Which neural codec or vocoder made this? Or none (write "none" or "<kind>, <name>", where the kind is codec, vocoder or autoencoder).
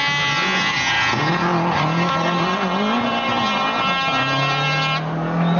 none